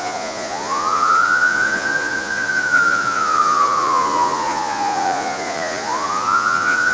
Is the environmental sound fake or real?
fake